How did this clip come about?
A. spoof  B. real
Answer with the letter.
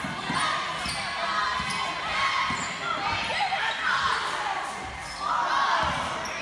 B